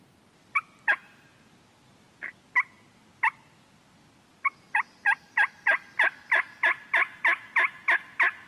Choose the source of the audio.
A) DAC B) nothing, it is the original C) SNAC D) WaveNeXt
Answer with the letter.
B